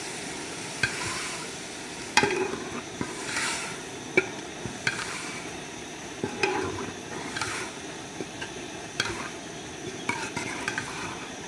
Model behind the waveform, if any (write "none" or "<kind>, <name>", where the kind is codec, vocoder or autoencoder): vocoder, BigVGAN v2